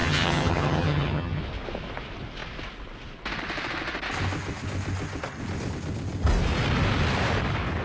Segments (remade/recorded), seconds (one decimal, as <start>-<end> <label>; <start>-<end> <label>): 0.0-1.4 remade; 1.4-7.8 recorded